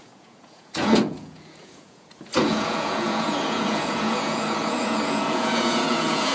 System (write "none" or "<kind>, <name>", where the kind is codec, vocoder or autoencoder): vocoder, Vocos